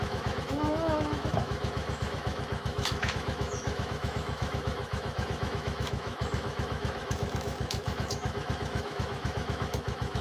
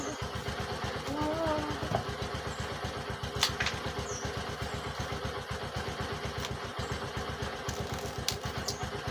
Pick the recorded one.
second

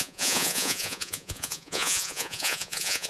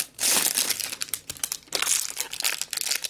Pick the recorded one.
second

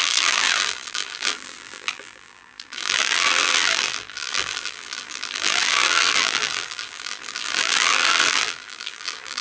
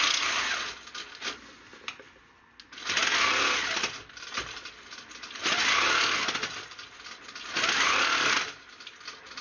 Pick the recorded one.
second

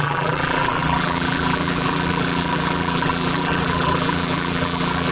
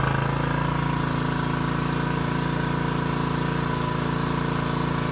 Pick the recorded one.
second